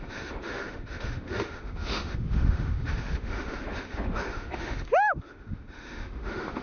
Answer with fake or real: fake